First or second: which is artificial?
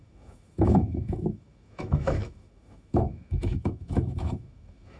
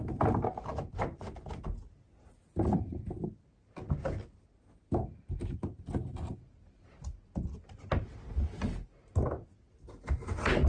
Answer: first